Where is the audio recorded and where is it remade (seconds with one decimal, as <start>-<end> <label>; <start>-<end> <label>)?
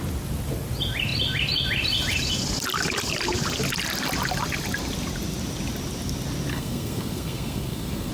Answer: 0.0-6.5 recorded; 6.5-8.1 remade